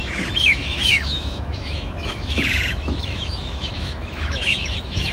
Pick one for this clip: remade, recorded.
remade